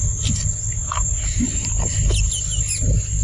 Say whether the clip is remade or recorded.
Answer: recorded